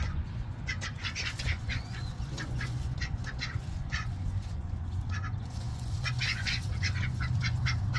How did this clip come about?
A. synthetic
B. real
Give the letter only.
A